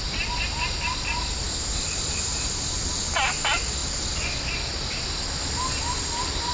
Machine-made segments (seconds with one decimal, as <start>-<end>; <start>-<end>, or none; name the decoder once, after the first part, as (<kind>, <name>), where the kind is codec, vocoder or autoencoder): none